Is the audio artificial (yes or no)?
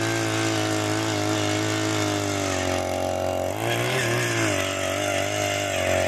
no